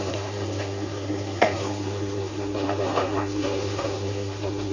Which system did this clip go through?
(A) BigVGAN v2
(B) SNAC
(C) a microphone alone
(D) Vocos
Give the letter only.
B